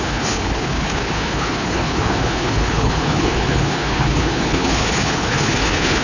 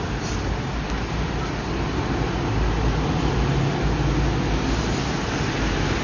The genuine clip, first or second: second